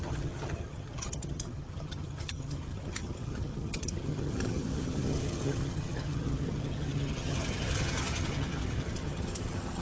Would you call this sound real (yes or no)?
no